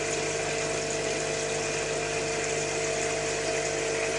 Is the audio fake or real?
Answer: real